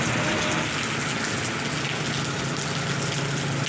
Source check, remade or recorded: recorded